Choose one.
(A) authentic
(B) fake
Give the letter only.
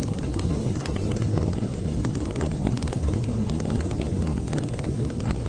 B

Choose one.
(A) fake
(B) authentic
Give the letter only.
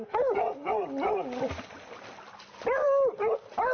B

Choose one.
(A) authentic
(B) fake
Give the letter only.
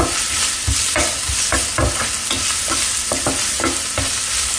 A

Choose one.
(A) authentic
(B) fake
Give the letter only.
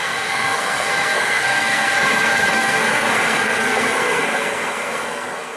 B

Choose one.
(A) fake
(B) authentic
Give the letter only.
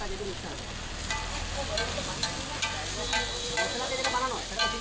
B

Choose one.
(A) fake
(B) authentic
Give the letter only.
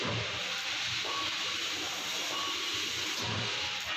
B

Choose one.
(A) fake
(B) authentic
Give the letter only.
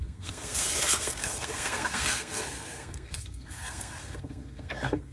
A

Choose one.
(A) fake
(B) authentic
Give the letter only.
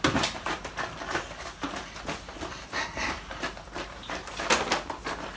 B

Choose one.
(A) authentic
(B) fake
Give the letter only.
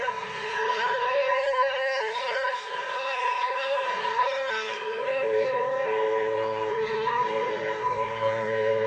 B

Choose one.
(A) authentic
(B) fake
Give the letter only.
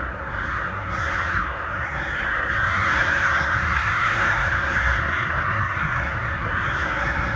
B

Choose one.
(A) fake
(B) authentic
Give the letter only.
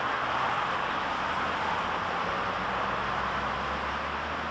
B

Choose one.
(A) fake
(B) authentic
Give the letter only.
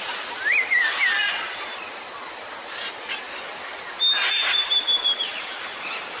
B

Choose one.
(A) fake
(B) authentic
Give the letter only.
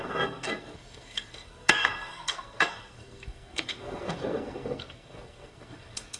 A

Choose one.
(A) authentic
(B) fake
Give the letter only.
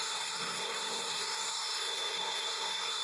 B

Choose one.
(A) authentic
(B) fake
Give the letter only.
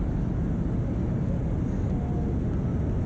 A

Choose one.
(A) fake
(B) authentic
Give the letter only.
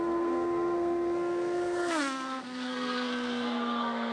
A